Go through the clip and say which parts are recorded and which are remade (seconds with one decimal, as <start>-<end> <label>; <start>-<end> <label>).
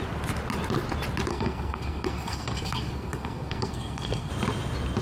0.0-1.3 recorded; 1.3-4.3 remade; 4.3-5.0 recorded